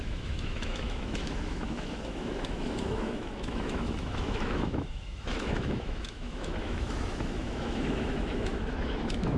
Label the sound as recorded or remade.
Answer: remade